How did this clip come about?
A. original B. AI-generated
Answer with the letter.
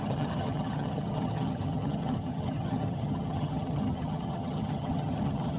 B